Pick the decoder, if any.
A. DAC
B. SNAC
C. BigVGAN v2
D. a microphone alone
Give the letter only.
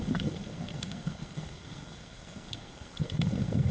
B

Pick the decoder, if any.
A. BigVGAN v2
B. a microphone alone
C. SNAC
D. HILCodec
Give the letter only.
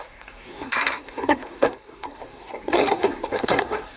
C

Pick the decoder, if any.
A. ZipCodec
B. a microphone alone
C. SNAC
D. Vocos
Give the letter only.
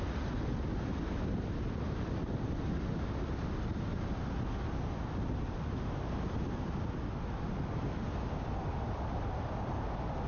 B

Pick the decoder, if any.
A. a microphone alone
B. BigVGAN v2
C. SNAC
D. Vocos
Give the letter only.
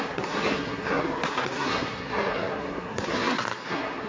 C